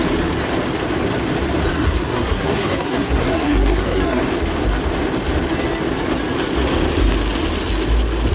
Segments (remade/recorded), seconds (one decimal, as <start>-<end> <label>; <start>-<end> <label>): 0.0-1.7 recorded; 1.7-4.2 remade; 4.2-8.3 recorded